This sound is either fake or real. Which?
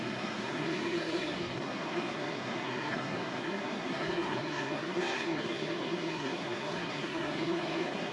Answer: fake